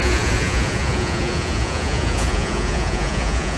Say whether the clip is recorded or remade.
remade